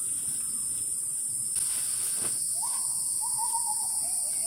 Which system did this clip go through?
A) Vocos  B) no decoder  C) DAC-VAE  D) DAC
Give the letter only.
B